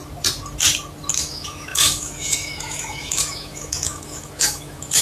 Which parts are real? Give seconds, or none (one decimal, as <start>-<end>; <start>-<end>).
0.0-1.1